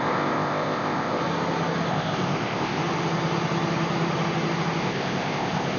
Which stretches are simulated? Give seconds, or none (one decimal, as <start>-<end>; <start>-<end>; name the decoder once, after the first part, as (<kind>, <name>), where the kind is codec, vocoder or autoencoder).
0.0-1.2 (codec, ZipCodec); 1.9-2.8; 4.8-5.8